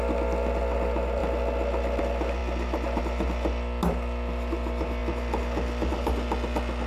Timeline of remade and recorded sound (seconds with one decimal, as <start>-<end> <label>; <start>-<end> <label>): 0.0-6.9 recorded